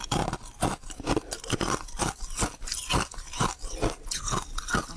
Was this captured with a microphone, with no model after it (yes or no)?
yes